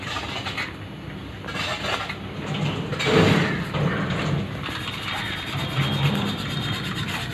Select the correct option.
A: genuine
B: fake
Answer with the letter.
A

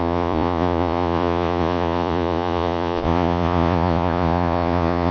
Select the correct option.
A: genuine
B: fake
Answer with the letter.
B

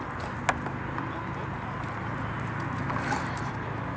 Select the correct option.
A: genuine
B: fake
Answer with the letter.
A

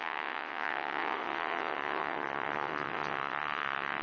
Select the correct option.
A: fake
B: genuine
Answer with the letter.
A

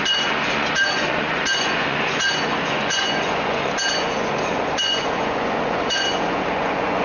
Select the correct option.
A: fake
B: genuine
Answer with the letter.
A